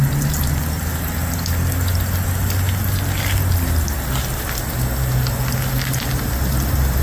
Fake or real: real